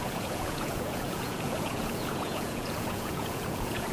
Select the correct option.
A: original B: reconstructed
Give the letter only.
B